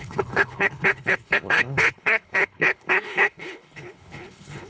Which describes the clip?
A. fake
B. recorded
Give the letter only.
A